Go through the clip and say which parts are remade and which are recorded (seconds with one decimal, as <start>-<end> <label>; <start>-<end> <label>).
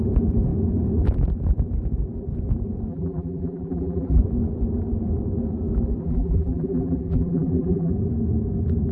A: 0.0-2.9 recorded; 2.9-4.2 remade; 4.2-6.0 recorded; 6.0-7.9 remade; 7.9-8.9 recorded